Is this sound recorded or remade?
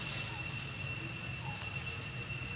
recorded